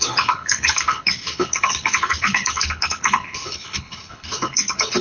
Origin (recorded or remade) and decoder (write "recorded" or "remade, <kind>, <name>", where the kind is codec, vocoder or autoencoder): remade, codec, HILCodec